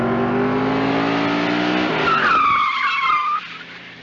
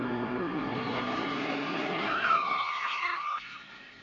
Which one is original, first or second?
first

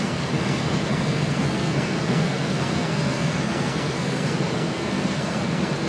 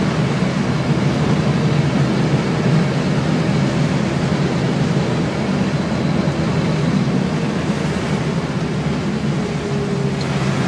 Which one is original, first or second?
second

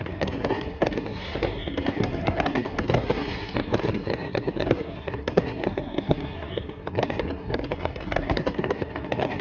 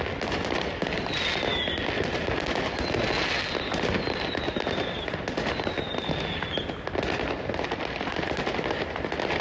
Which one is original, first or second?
second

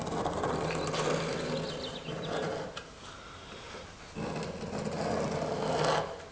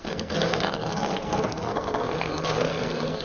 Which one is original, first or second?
first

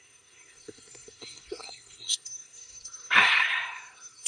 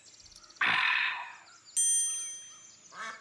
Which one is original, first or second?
second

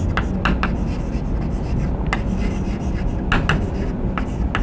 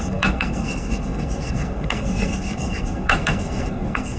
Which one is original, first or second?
first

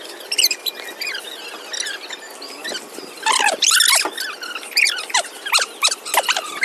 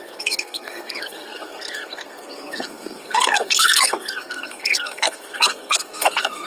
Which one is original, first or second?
first